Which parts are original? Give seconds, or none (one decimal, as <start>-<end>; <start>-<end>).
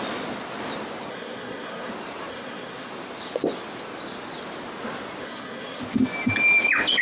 0.0-1.1; 1.9-2.3; 2.9-5.2; 5.8-7.0